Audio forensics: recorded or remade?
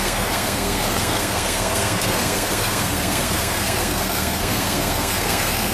remade